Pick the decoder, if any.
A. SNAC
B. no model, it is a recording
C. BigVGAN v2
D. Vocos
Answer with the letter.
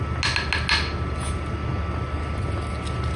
B